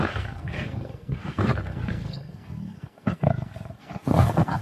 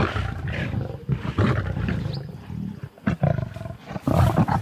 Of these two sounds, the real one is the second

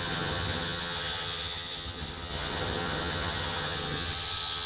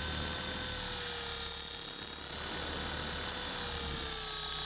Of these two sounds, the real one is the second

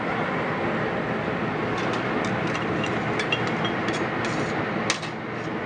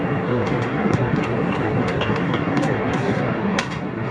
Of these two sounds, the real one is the first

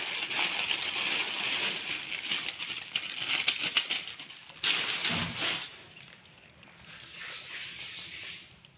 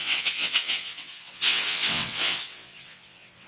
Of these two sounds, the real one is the first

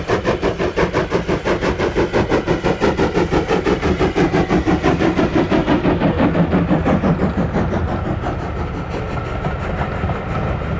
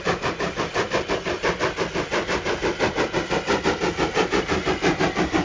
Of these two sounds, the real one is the first